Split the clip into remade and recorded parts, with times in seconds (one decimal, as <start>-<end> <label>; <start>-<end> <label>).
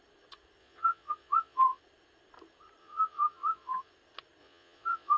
0.0-0.6 recorded; 0.6-1.8 remade; 1.8-2.8 recorded; 2.8-3.9 remade; 3.9-4.4 recorded; 4.4-5.2 remade